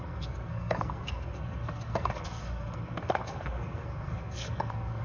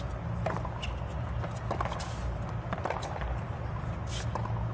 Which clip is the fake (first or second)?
first